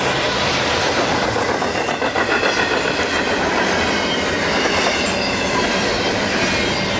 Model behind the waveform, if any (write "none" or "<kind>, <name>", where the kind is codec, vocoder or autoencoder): none